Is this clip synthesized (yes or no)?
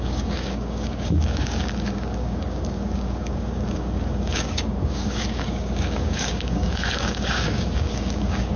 yes